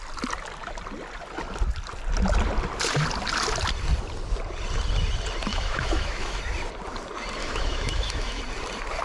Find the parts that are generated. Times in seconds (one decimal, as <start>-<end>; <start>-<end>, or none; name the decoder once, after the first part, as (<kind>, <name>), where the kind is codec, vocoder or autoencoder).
5.5-6.4 (autoencoder, DAC-VAE); 7.4-8.4